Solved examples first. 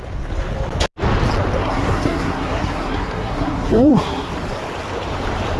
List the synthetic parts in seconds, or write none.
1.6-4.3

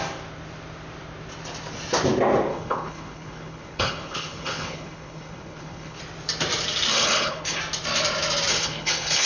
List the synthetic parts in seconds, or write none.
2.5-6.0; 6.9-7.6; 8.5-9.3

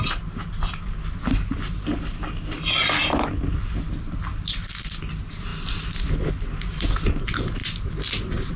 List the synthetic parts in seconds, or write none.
none

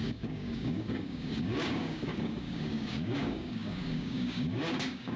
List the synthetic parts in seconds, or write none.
0.0-5.2

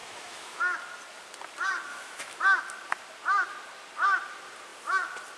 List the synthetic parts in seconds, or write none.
0.0-0.6; 1.9-2.4

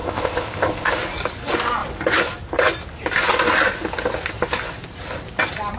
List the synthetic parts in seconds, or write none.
0.0-0.9

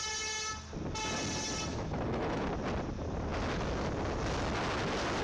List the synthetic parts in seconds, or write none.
1.7-2.4